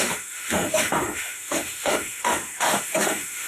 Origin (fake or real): fake